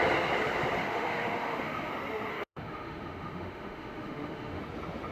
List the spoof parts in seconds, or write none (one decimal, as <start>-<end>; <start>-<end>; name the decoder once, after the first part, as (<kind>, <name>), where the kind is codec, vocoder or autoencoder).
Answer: 0.8-1.9 (autoencoder, DAC-VAE); 2.3-4.6